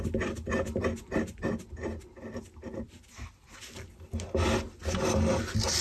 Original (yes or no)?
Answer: yes